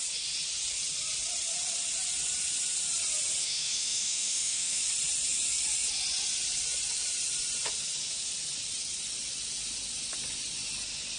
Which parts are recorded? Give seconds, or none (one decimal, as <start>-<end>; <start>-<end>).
0.0-3.4; 4.8-11.2